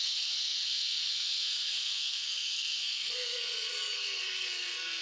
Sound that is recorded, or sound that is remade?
remade